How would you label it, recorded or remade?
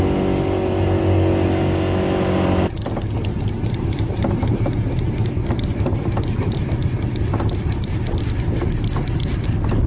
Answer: recorded